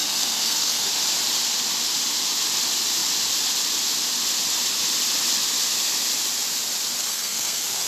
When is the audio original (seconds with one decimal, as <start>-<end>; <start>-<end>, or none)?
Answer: 0.9-7.0